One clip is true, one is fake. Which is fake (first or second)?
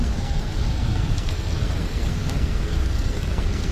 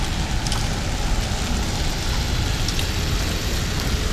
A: first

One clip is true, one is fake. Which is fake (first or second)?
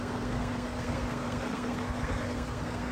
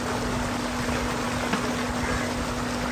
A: first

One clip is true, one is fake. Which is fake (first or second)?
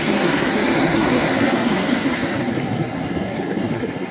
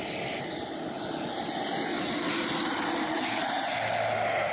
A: first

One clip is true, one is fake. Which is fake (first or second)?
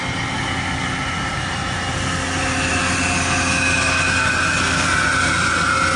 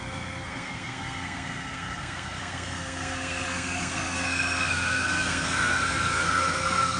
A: second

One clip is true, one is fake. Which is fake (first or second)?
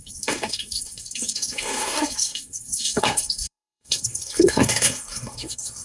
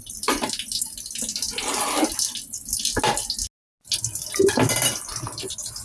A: first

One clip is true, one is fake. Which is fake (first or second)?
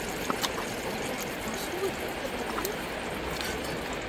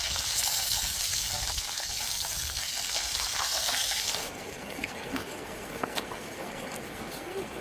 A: second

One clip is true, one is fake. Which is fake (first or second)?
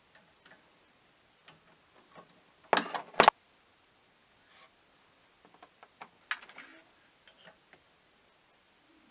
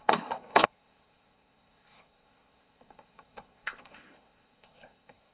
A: second